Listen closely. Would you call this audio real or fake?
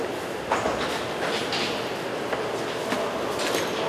real